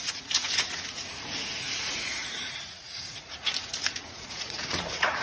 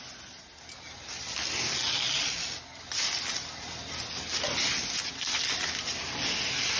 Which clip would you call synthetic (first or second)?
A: first